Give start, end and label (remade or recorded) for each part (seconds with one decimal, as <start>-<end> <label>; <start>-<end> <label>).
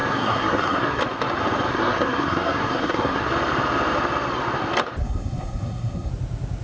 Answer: 0.0-1.0 remade; 1.0-1.7 recorded; 1.7-3.3 remade; 3.3-5.0 recorded; 5.0-6.1 remade; 6.1-6.6 recorded